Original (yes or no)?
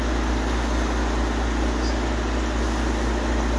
yes